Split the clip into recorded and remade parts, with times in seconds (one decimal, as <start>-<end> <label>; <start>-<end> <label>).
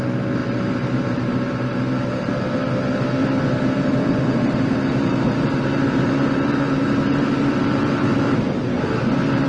0.0-0.4 recorded; 0.4-2.3 remade; 2.3-3.2 recorded; 3.2-8.2 remade; 8.2-9.5 recorded